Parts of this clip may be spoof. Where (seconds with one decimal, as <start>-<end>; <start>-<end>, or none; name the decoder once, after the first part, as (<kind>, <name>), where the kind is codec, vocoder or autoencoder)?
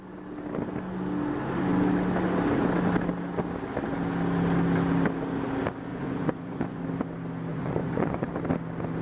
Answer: 5.9-6.8 (vocoder, Vocos); 7.5-8.3